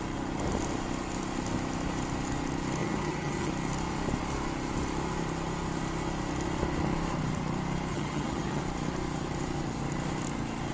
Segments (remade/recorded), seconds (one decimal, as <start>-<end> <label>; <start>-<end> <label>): 0.0-2.8 recorded; 2.8-3.5 remade; 3.5-7.9 recorded; 7.9-8.6 remade; 8.6-10.7 recorded